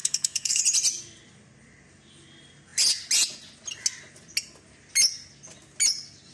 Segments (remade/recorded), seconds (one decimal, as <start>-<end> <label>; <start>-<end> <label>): 0.0-0.6 remade; 0.6-6.3 recorded